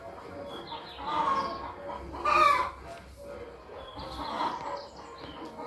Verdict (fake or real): real